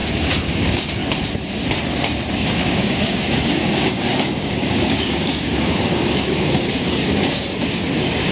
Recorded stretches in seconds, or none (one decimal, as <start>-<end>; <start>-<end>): 1.0-2.3